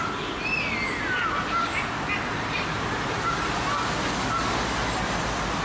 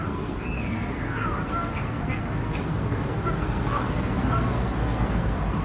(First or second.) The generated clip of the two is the second